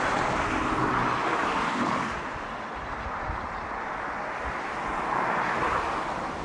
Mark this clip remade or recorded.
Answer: recorded